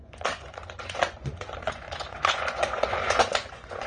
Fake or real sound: fake